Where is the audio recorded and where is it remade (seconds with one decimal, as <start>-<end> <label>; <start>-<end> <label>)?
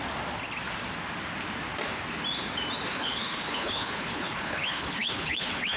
0.0-2.9 recorded; 2.9-5.8 remade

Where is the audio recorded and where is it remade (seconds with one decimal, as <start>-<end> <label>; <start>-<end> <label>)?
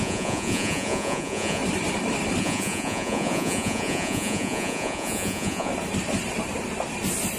0.0-1.6 remade; 1.6-2.4 recorded; 2.4-5.7 remade; 5.7-7.4 recorded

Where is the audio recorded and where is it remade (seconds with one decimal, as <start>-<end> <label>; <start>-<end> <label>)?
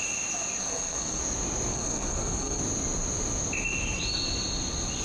0.0-0.6 recorded; 0.6-1.2 remade; 1.2-1.7 recorded; 1.7-2.6 remade; 2.6-5.0 recorded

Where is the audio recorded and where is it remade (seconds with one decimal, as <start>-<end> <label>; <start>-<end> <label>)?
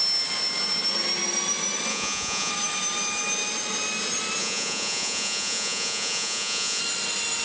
0.0-1.9 recorded; 1.9-2.5 remade; 2.5-4.4 recorded; 4.4-6.8 remade; 6.8-7.4 recorded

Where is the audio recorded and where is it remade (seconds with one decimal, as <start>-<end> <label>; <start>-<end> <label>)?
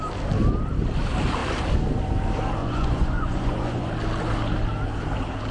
0.0-2.6 recorded; 2.6-3.9 remade; 3.9-5.5 recorded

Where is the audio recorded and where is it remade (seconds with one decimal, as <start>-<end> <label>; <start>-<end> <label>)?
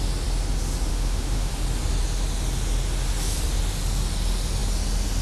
0.0-0.9 recorded; 0.9-1.5 remade; 1.5-5.2 recorded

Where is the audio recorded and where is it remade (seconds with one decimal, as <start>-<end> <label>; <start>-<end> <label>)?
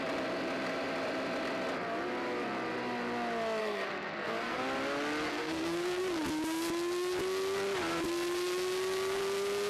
0.0-3.6 recorded; 3.6-4.6 remade; 4.6-5.3 recorded; 5.3-6.0 remade; 6.0-9.7 recorded